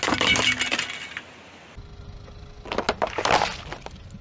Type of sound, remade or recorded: recorded